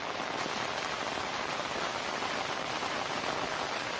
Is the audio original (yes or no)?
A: yes